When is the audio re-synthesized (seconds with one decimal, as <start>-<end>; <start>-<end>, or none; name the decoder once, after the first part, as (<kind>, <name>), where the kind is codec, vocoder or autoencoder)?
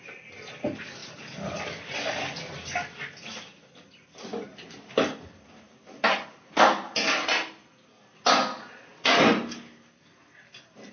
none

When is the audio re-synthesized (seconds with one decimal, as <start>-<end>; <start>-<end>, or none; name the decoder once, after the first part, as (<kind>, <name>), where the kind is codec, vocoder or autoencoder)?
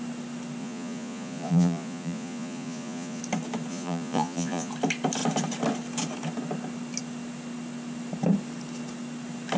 0.6-3.2 (vocoder, Vocos); 3.7-4.7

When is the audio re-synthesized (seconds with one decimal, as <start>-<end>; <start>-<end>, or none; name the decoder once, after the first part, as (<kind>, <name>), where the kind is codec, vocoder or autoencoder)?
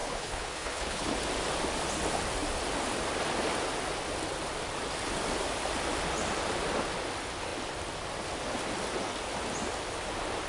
0.0-1.1 (codec, HILCodec)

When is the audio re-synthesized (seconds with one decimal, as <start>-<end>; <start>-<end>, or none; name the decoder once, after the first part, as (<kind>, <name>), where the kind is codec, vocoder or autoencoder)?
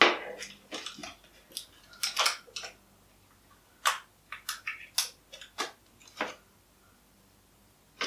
none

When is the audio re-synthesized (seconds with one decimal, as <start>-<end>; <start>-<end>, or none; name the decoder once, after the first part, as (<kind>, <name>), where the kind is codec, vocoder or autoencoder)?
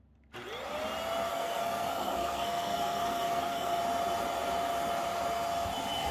1.3-3.8 (codec, SNAC)